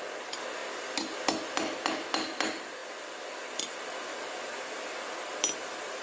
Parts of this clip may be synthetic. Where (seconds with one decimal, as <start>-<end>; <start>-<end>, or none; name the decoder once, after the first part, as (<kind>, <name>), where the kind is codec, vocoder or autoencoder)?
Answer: none